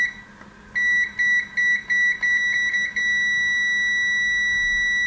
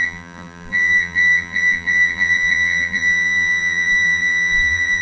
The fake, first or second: second